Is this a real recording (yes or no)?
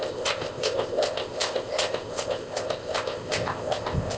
no